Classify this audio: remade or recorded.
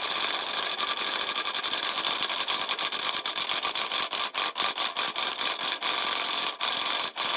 recorded